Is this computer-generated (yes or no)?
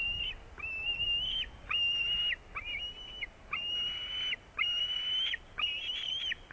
yes